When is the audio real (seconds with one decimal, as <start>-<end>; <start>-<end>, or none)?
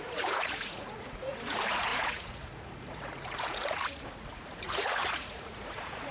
none